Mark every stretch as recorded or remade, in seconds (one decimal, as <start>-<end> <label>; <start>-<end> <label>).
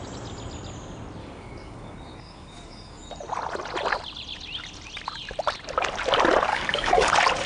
0.0-1.2 recorded; 1.2-3.1 remade; 3.1-6.5 recorded; 6.5-7.1 remade; 7.1-7.5 recorded